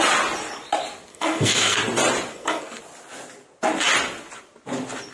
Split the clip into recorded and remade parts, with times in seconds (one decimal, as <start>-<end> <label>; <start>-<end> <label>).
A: 0.0-1.1 recorded; 1.1-1.8 remade; 1.8-2.3 recorded; 2.3-2.8 remade; 2.8-5.1 recorded